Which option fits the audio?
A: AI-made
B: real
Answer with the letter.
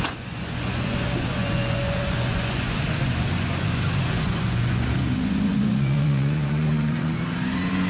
A